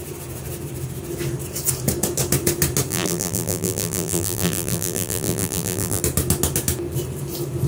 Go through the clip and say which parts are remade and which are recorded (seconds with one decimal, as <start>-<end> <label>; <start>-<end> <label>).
0.0-2.9 recorded; 2.9-6.0 remade; 6.0-7.7 recorded